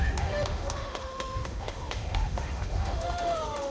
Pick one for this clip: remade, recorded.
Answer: remade